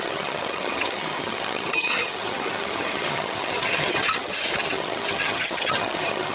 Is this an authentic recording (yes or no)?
no